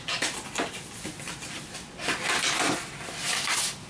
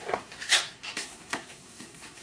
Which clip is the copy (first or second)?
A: second